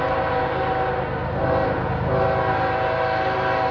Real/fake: real